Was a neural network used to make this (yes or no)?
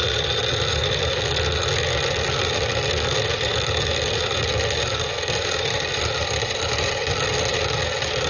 no